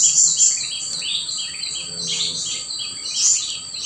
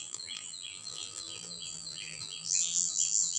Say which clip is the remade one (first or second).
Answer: second